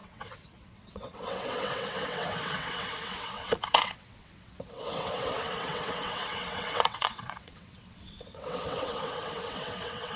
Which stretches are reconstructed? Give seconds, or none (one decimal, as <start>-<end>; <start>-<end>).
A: 0.0-10.2